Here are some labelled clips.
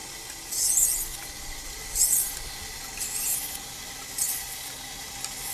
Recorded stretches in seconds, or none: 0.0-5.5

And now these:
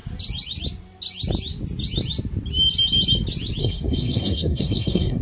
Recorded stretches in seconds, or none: 0.0-3.6

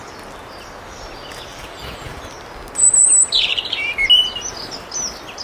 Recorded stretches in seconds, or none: 0.0-1.5; 2.2-5.4

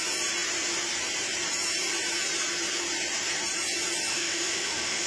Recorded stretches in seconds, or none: 0.0-4.1